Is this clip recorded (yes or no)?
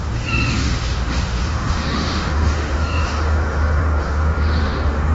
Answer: no